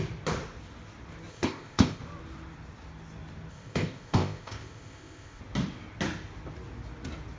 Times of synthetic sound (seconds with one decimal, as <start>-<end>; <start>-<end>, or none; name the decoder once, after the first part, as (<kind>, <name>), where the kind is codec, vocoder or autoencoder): 1.3-2.0 (codec, ZipCodec); 3.5-5.4